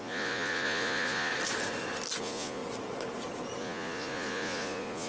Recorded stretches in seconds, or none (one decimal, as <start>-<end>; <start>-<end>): 1.3-2.2; 2.6-3.6